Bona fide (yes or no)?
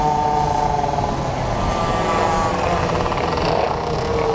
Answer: yes